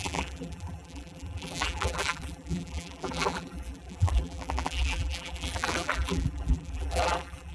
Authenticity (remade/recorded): remade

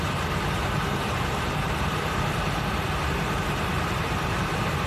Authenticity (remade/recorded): remade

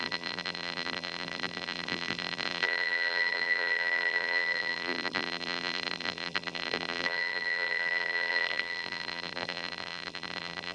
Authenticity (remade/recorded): remade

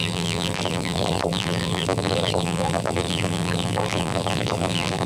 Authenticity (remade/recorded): remade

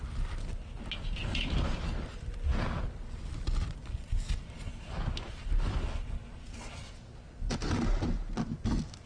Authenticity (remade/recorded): recorded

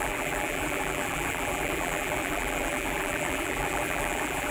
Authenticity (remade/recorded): remade